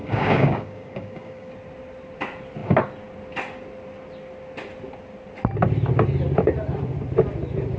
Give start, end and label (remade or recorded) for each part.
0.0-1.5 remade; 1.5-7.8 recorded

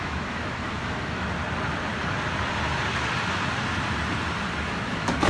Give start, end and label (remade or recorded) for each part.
0.0-1.4 remade; 1.4-4.6 recorded; 4.6-5.3 remade

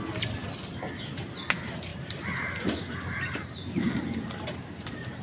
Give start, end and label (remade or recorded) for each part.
0.0-1.9 recorded; 1.9-5.2 remade

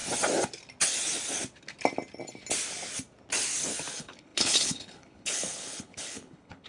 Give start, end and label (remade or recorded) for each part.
0.0-3.9 recorded; 3.9-6.7 remade

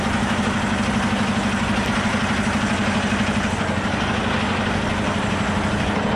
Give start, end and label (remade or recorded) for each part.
0.0-6.2 recorded

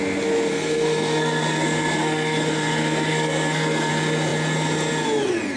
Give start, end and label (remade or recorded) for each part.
0.0-0.5 recorded; 0.5-3.9 remade; 3.9-5.6 recorded

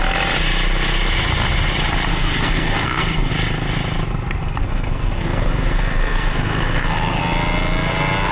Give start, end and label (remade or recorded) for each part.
0.0-2.1 recorded; 2.1-3.3 remade; 3.3-4.6 recorded; 4.6-7.2 remade; 7.2-8.3 recorded

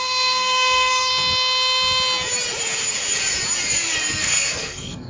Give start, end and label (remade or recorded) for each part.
0.0-1.1 remade; 1.1-4.2 recorded; 4.2-5.1 remade